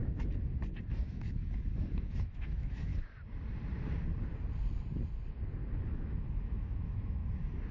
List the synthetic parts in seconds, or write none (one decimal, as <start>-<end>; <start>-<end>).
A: 0.9-2.9; 5.9-7.2